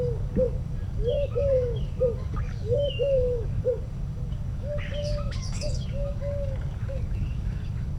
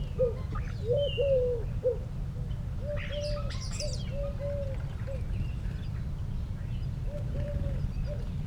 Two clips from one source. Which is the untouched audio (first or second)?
second